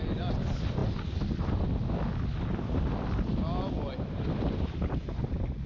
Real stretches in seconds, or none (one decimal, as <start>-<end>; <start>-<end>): 0.0-5.7